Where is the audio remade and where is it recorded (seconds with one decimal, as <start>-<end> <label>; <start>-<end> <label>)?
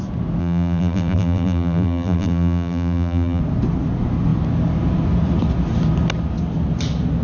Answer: 0.0-0.4 recorded; 0.4-3.4 remade; 3.4-7.2 recorded